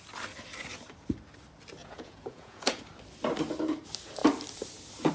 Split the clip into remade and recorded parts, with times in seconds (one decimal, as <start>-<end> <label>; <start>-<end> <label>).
0.0-1.8 recorded; 1.8-2.8 remade; 2.8-5.1 recorded

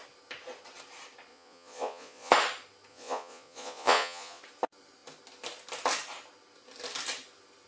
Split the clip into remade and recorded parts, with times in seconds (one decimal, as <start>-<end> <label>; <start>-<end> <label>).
0.0-1.3 recorded; 1.3-2.3 remade; 2.3-2.9 recorded; 2.9-4.4 remade; 4.4-7.7 recorded

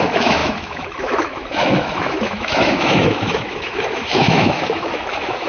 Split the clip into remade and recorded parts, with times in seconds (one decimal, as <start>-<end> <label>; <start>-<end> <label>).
0.0-5.5 remade

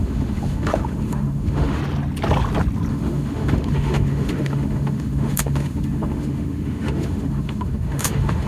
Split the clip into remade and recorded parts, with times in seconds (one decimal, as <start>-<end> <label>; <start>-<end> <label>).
0.0-1.8 remade; 1.8-2.9 recorded; 2.9-8.5 remade